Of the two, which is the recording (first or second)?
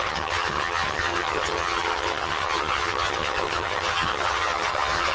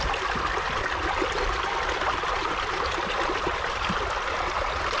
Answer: second